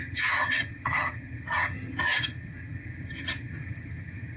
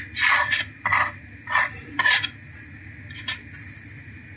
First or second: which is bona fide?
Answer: second